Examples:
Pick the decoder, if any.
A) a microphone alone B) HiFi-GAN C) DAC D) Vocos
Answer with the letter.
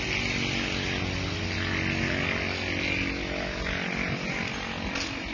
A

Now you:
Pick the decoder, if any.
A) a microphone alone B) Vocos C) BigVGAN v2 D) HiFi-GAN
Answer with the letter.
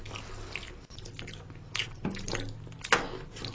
A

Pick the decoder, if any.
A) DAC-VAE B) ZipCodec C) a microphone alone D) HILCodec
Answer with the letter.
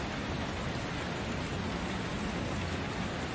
C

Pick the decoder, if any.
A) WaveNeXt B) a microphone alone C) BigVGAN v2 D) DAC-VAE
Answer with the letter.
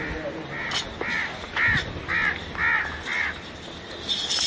B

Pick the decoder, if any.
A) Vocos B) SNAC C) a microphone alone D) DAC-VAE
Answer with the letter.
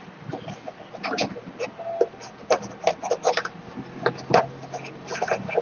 C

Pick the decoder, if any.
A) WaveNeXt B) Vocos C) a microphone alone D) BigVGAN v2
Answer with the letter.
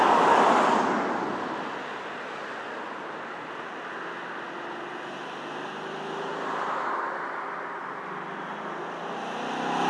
C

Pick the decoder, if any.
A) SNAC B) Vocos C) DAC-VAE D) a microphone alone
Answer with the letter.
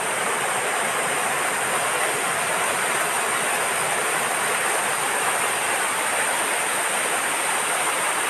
D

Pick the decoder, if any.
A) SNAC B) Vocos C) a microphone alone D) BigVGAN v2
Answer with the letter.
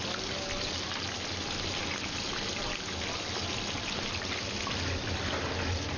C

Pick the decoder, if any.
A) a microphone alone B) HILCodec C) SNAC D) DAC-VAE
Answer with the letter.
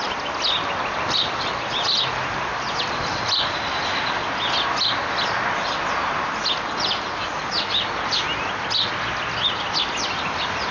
A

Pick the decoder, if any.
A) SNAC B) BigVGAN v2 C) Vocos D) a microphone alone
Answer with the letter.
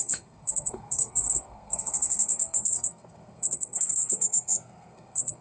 A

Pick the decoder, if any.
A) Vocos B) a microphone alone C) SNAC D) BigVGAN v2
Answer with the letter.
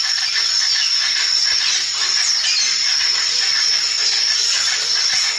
B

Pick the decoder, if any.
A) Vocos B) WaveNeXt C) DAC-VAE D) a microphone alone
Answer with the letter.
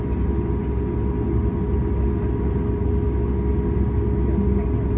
D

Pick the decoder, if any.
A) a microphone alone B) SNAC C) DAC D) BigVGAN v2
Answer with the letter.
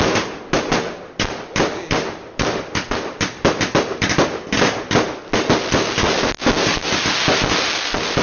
A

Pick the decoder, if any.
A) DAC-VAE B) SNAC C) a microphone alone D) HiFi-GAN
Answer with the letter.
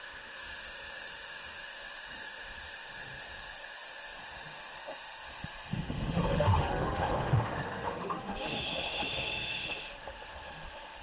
A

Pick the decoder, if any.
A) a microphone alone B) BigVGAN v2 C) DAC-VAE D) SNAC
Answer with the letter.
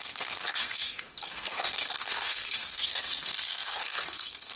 D